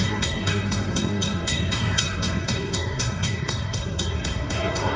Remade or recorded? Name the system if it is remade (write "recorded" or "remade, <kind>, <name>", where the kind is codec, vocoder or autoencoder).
remade, codec, SNAC